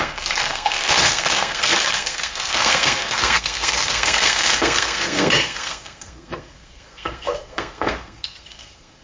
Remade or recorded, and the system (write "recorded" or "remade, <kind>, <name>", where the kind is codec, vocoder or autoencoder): remade, codec, SNAC